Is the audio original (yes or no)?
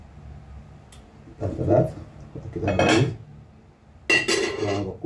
yes